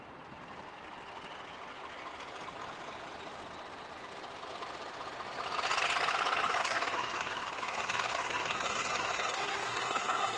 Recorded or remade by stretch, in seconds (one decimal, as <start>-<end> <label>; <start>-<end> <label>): 0.0-6.6 recorded; 6.6-10.4 remade